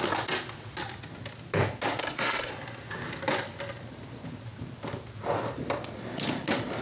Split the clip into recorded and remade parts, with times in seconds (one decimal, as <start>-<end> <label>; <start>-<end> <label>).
0.0-2.0 recorded; 2.0-2.5 remade; 2.5-6.8 recorded